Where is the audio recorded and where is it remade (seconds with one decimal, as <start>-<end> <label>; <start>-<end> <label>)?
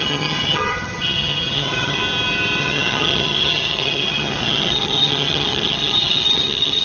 0.0-2.0 remade; 2.0-2.6 recorded; 2.6-6.8 remade